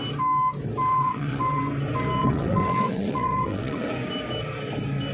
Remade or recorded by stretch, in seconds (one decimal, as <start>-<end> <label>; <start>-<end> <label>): 0.0-0.9 recorded; 0.9-1.6 remade; 1.6-2.2 recorded; 2.2-3.9 remade; 3.9-5.1 recorded